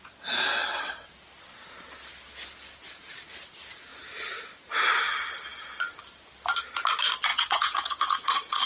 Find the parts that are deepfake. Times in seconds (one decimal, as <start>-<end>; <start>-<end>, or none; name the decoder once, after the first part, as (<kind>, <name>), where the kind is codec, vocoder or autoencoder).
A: 0.6-1.1 (vocoder, WaveNeXt); 7.3-8.7